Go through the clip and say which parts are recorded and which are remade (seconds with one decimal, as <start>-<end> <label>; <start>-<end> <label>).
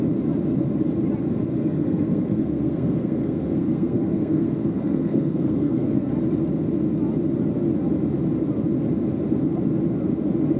0.0-1.6 recorded; 1.6-6.1 remade; 6.1-10.6 recorded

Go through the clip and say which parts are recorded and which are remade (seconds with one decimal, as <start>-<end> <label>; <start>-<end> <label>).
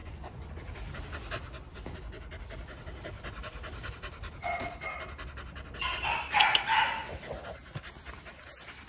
0.0-0.5 remade; 0.5-8.9 recorded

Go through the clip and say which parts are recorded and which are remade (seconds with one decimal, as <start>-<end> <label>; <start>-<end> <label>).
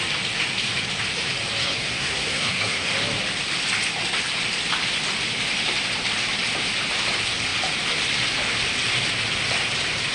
0.0-1.6 recorded; 1.6-2.9 remade; 2.9-10.1 recorded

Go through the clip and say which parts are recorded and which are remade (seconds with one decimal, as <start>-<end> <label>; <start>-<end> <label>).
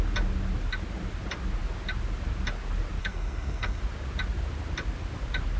0.0-3.0 recorded; 3.0-3.8 remade; 3.8-5.6 recorded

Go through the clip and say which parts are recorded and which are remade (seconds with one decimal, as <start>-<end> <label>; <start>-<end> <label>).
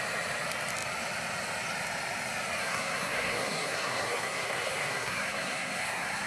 0.0-2.6 recorded; 2.6-6.3 remade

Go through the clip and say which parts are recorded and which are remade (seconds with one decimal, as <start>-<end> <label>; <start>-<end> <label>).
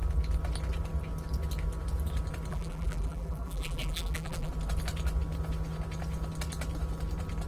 0.0-2.5 recorded; 2.5-4.5 remade; 4.5-7.5 recorded